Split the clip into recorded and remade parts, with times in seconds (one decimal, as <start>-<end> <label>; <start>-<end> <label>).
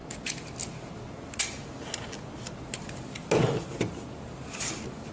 0.0-5.1 recorded